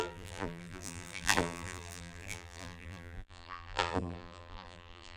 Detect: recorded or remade remade